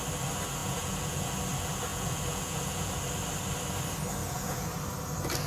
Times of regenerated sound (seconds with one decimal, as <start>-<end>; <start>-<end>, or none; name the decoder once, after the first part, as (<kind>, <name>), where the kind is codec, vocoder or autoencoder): 0.6-1.3 (vocoder, Vocos); 1.9-2.9; 4.2-4.7